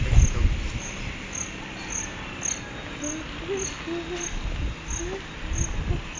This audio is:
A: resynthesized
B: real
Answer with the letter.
B